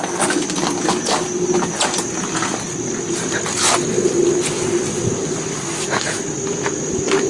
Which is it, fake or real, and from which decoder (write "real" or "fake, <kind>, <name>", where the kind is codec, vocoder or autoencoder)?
real